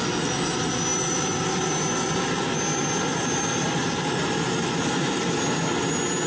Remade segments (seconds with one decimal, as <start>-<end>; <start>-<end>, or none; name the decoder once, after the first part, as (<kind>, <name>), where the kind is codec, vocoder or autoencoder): 0.9-2.4 (vocoder, BigVGAN v2); 3.1-5.4

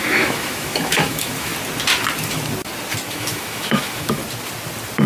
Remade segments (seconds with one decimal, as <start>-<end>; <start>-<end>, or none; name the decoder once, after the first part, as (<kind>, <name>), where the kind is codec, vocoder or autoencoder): 0.0-1.5 (autoencoder, DAC-VAE); 3.1-4.2

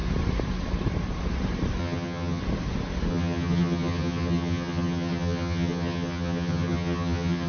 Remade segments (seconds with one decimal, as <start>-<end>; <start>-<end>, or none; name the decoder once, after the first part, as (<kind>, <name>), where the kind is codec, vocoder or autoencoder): 1.8-2.4 (vocoder, HiFi-GAN); 3.1-7.5

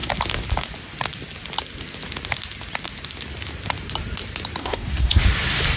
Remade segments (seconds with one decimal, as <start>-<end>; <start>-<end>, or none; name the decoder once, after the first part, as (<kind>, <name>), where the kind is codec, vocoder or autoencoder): 4.6-5.2 (codec, SNAC)